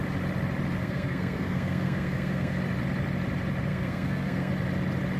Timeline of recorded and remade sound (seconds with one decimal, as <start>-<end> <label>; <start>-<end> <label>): 0.0-0.8 recorded; 0.8-2.6 remade; 2.6-3.7 recorded; 3.7-4.5 remade; 4.5-5.2 recorded